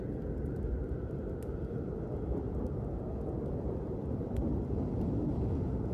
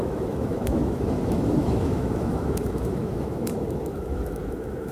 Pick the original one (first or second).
first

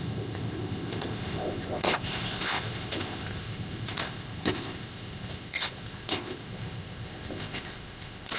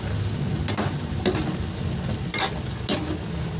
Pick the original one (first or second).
second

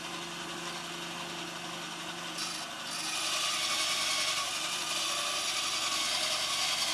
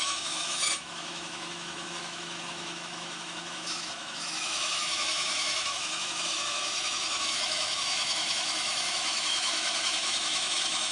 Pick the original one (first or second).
first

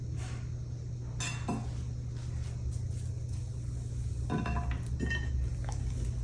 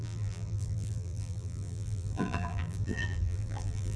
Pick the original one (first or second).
first